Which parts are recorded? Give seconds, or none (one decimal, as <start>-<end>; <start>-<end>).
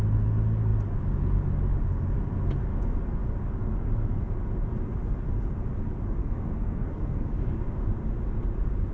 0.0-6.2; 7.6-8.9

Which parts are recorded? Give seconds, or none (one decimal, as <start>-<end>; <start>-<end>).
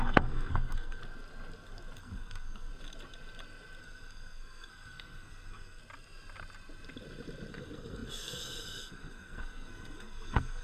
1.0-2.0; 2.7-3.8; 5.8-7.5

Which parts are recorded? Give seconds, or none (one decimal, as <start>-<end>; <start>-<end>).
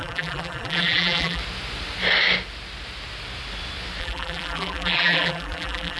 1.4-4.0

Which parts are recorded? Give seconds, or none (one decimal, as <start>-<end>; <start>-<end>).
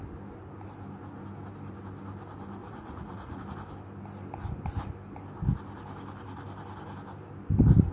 0.0-2.6; 3.4-7.9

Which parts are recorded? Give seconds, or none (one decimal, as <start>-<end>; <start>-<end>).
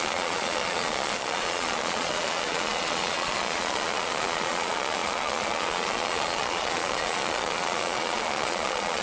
none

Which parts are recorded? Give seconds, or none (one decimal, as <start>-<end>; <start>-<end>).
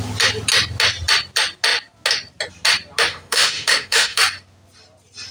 0.0-3.1; 4.2-5.3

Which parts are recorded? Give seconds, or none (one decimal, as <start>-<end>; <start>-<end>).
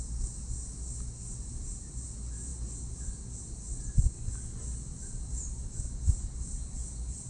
0.0-7.3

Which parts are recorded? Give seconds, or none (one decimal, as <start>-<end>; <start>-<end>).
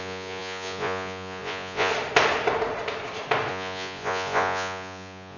1.9-3.5